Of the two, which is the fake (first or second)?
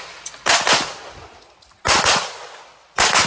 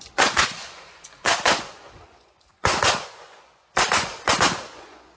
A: second